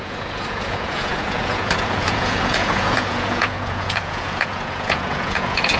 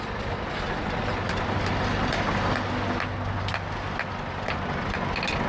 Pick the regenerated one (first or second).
first